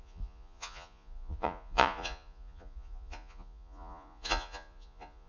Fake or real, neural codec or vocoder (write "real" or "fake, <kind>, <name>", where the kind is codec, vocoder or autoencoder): fake, vocoder, Vocos